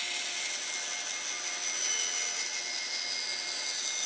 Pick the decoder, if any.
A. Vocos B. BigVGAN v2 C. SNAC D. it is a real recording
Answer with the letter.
D